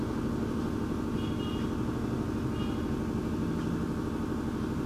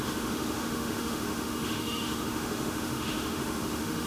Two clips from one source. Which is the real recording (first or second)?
first